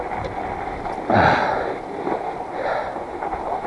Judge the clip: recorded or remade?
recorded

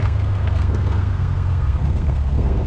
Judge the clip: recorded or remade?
remade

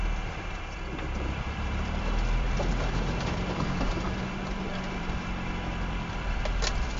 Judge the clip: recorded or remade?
remade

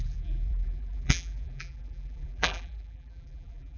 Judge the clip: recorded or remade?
remade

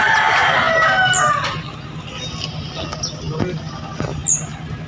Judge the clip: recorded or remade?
recorded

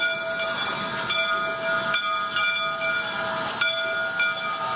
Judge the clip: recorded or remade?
recorded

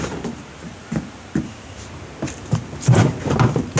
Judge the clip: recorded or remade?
recorded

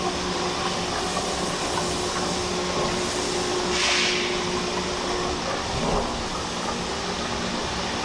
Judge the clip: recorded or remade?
recorded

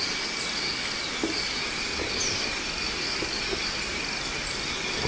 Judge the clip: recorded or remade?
recorded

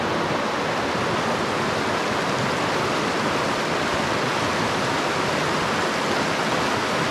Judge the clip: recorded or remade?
recorded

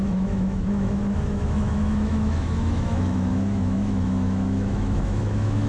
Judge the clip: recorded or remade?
remade